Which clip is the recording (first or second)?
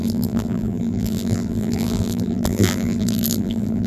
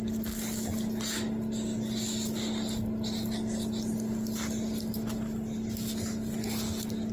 second